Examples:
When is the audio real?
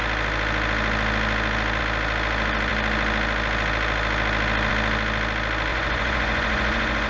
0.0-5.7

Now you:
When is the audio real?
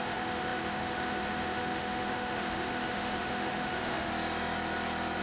4.1-5.2